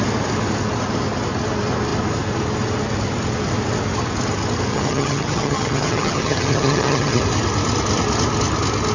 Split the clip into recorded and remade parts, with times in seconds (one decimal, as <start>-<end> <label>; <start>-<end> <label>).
0.0-4.7 recorded; 4.7-7.2 remade; 7.2-8.9 recorded